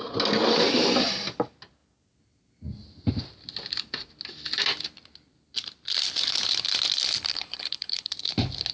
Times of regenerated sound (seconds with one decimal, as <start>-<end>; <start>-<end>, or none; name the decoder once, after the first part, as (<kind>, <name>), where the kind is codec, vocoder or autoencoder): 7.3-8.1 (codec, HILCodec)